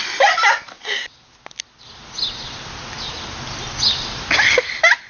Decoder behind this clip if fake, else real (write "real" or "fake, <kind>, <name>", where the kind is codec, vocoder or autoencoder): real